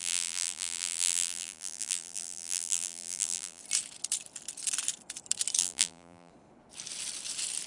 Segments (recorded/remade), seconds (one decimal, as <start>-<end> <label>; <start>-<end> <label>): 0.0-3.6 remade; 3.6-5.6 recorded; 5.6-6.3 remade; 6.3-7.7 recorded